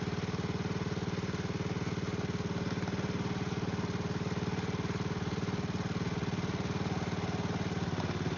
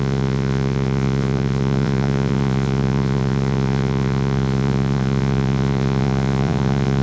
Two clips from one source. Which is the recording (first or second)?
first